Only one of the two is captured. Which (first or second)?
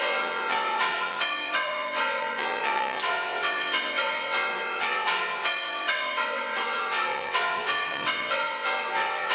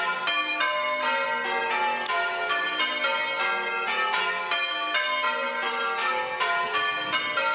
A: second